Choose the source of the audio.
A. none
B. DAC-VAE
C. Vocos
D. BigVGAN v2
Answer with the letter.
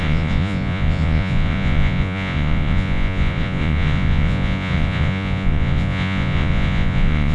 C